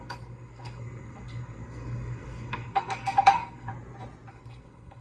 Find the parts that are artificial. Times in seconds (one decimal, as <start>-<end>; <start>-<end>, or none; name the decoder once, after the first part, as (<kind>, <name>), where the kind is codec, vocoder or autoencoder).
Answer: 0.0-3.7 (codec, SNAC); 4.3-5.0